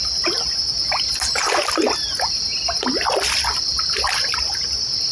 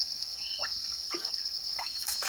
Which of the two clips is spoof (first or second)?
second